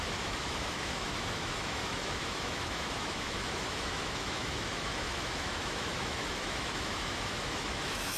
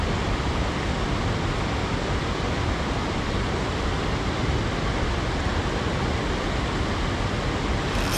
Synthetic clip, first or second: first